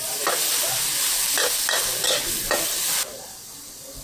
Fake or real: real